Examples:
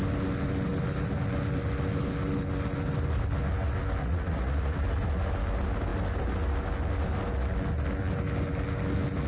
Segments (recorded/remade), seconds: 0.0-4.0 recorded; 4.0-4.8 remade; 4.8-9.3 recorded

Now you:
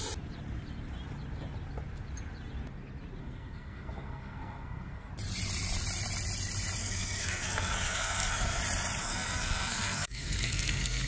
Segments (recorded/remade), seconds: 0.0-3.2 recorded; 3.2-5.1 remade; 5.1-6.8 recorded; 6.8-8.6 remade; 8.6-9.0 recorded; 9.0-11.1 remade

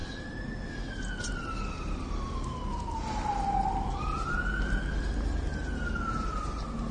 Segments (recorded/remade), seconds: 0.0-6.9 recorded

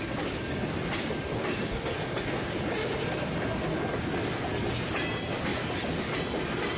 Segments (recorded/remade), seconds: 0.0-4.1 remade; 4.1-6.8 recorded

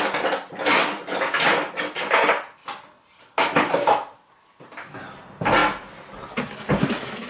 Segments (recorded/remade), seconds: 0.0-7.3 recorded

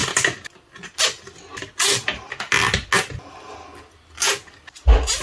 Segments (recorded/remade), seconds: 0.0-5.2 recorded

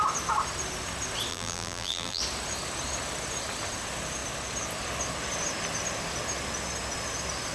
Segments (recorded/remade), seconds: 0.0-1.3 recorded; 1.3-2.2 remade; 2.2-7.5 recorded